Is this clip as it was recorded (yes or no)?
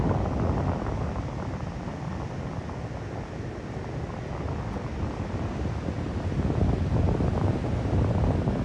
yes